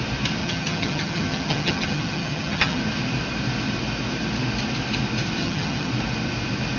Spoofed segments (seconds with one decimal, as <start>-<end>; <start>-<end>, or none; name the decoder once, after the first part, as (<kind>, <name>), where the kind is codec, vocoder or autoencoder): 0.4-2.8 (vocoder, HiFi-GAN); 5.4-5.9

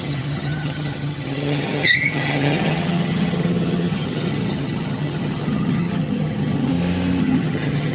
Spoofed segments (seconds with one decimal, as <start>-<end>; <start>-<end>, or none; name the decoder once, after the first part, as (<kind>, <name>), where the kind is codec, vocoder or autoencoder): 0.0-6.7 (vocoder, HiFi-GAN); 7.2-7.9